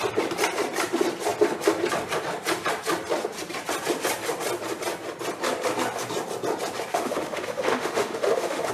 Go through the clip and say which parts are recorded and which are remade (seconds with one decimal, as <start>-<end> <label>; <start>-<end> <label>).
0.0-6.9 recorded; 6.9-8.7 remade